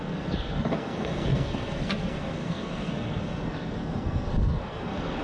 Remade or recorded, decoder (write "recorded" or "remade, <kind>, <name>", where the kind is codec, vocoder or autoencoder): remade, codec, SNAC